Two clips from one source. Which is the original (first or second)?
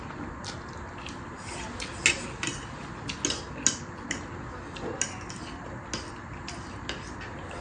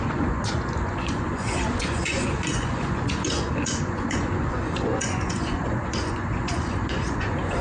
first